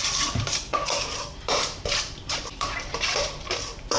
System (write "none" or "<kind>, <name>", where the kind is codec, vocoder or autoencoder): vocoder, BigVGAN v2